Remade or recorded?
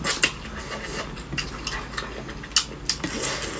recorded